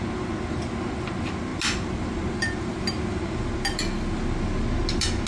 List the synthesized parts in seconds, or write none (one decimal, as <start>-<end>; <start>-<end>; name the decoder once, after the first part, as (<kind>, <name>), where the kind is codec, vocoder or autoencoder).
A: none